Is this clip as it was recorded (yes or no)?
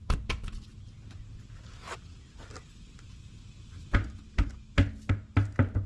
yes